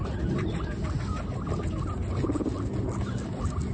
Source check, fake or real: real